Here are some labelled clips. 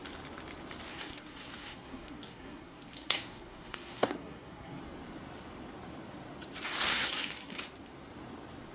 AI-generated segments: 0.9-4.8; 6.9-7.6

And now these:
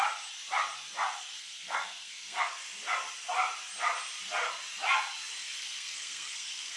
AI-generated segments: 1.4-2.6; 5.4-6.8

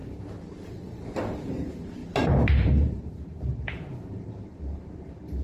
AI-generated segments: 0.0-5.4

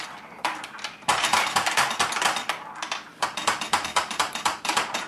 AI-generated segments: 1.1-1.9; 3.4-5.1

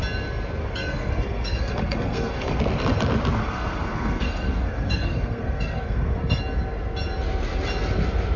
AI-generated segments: 0.6-2.6; 3.4-6.4

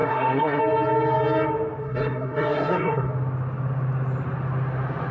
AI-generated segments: 0.0-0.6; 1.8-3.1

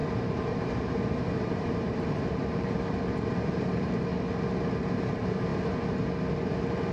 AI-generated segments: 0.0-4.1; 5.1-5.5

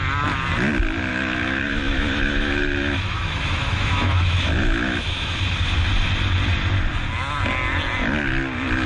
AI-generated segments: 1.1-5.4